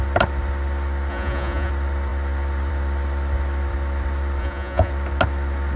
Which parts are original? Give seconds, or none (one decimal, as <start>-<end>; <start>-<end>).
0.0-1.1; 1.7-4.4; 4.9-5.8